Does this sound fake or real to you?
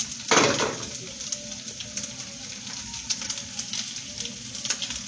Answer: real